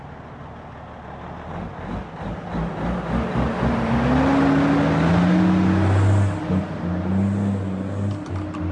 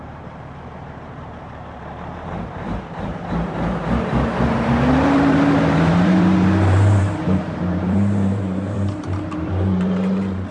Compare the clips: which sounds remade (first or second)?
second